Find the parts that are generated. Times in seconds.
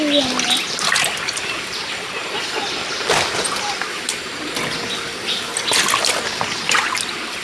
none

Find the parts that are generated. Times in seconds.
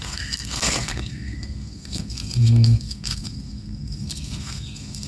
0.0-5.1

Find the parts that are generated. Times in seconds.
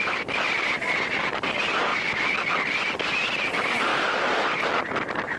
none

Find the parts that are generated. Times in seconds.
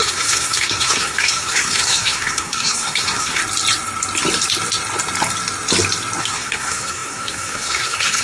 0.0-3.4; 6.2-8.2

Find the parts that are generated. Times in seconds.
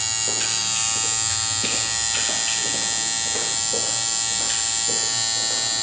none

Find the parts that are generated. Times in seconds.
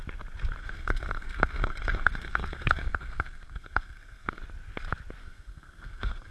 0.6-4.4; 5.2-6.3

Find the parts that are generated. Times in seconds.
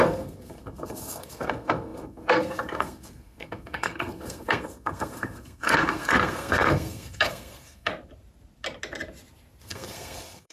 0.0-7.9; 9.6-10.5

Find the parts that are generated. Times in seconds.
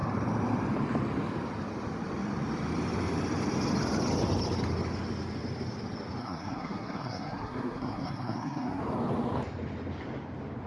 6.2-8.8